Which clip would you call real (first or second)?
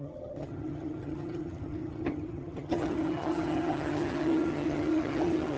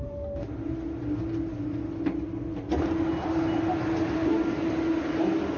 second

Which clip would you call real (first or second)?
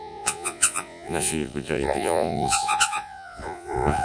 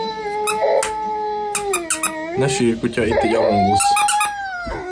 second